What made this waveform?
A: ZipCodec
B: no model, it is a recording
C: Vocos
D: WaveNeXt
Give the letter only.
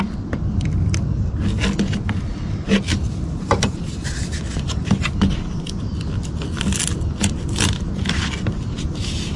B